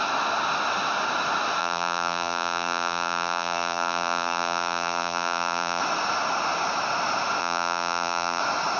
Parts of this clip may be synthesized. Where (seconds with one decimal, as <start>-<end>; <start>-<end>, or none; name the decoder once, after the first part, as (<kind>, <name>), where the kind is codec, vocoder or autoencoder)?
1.6-5.8 (vocoder, BigVGAN v2); 7.4-8.4